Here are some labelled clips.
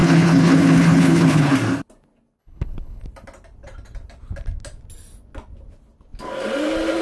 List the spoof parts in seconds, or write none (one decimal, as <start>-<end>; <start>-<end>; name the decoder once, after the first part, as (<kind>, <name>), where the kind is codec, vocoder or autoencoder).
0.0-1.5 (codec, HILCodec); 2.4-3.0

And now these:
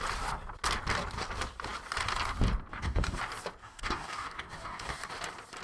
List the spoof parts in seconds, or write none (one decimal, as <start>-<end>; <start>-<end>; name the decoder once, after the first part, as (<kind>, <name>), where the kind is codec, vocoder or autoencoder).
2.7-3.2 (codec, DAC); 3.6-5.1

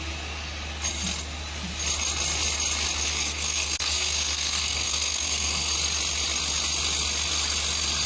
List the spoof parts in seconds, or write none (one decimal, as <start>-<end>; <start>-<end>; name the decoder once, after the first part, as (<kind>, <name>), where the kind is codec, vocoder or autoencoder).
3.0-5.7 (codec, SNAC)

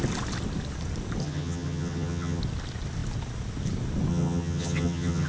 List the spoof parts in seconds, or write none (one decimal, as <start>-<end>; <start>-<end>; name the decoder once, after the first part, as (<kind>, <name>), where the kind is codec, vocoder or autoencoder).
1.2-2.4 (vocoder, HiFi-GAN); 4.1-5.3